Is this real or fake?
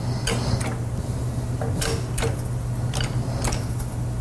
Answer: real